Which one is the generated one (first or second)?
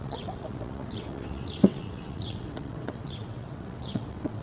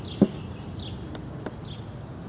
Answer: first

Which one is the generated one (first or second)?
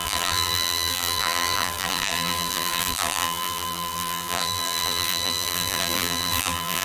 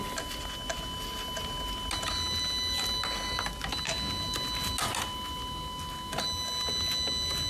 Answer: first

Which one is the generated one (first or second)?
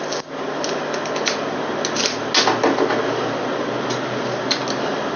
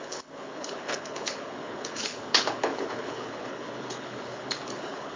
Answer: second